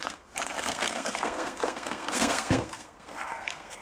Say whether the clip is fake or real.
fake